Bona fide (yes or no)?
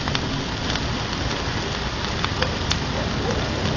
yes